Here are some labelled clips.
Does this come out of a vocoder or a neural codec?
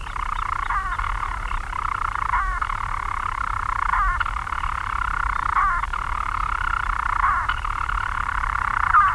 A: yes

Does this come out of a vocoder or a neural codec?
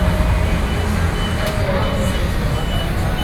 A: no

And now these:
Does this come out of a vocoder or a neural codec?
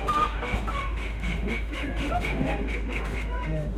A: yes